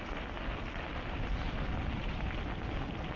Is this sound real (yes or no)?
yes